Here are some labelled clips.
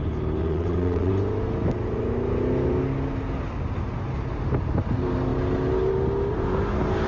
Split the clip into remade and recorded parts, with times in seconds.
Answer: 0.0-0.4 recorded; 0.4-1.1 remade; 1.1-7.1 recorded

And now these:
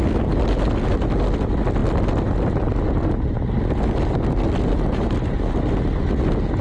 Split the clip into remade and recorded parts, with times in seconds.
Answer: 0.0-6.6 recorded